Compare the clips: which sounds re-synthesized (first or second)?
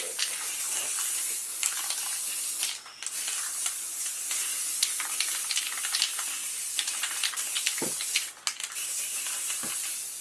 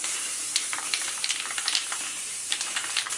second